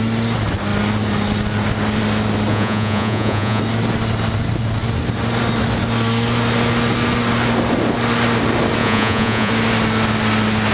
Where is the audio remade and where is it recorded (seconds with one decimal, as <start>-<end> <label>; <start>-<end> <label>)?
0.0-2.5 recorded; 2.5-3.6 remade; 3.6-8.8 recorded; 8.8-9.5 remade; 9.5-10.7 recorded